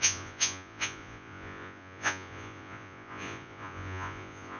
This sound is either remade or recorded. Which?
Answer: remade